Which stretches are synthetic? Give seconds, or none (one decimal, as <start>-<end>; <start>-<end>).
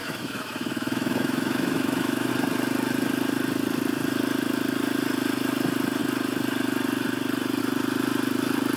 0.0-2.3